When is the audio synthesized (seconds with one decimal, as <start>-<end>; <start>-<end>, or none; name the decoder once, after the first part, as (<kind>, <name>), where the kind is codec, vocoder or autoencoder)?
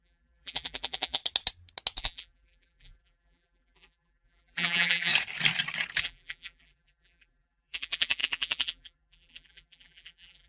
0.0-1.2 (vocoder, BigVGAN v2); 2.0-5.1; 6.0-10.5